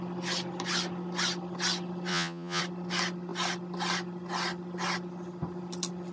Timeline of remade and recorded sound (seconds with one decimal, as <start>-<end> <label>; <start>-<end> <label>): 0.0-2.1 recorded; 2.1-2.6 remade; 2.6-6.1 recorded